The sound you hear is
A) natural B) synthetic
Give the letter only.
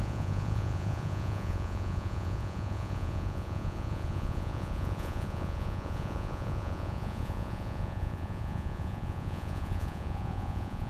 B